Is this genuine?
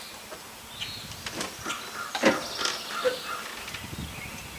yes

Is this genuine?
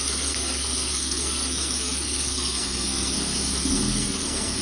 no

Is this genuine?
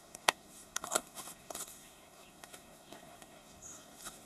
no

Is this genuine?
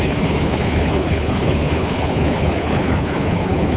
no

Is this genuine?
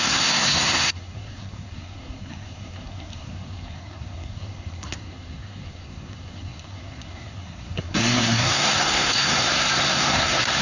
no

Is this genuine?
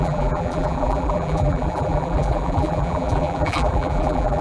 no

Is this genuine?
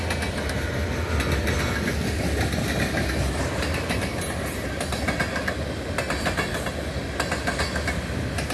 yes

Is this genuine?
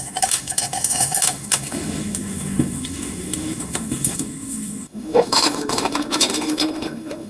no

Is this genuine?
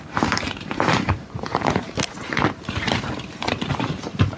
no